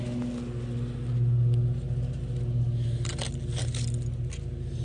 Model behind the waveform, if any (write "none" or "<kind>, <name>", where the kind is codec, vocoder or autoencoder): none